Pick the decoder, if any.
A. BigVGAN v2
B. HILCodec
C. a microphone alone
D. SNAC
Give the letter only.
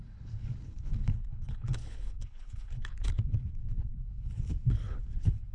B